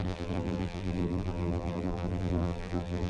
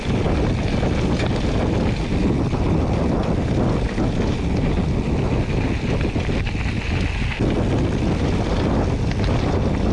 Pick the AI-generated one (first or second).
first